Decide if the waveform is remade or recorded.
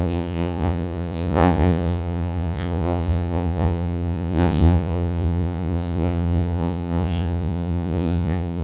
remade